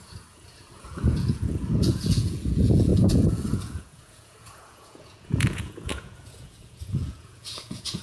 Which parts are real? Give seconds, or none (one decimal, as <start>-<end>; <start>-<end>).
none